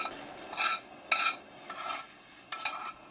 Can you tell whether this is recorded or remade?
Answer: recorded